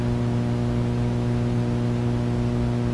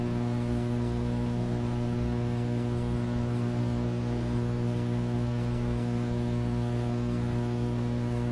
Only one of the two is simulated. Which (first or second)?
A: second